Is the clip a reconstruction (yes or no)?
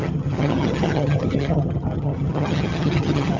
yes